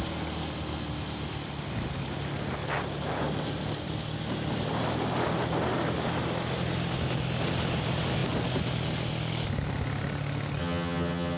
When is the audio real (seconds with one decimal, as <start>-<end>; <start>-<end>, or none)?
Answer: 0.0-10.6